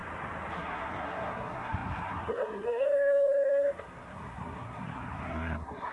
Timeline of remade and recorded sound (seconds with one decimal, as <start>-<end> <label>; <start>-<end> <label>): 0.0-0.5 recorded; 0.5-5.9 remade